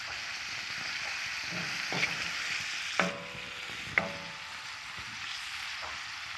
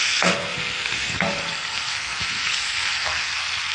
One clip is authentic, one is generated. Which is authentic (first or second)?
first